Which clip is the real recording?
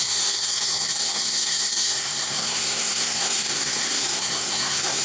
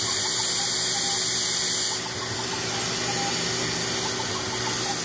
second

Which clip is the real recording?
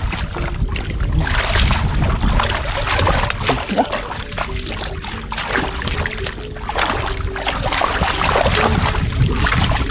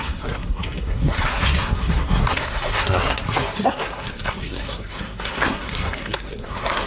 first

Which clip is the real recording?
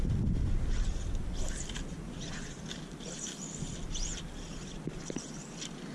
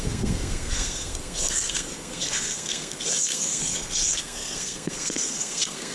first